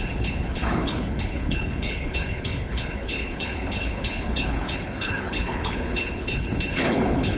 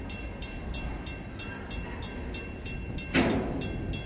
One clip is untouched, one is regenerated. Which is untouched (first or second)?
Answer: second